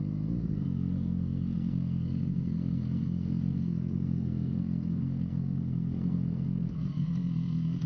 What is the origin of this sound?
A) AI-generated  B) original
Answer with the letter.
A